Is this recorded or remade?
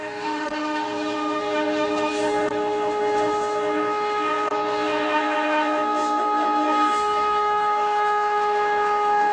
remade